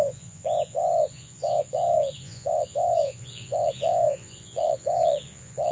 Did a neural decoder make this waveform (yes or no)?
yes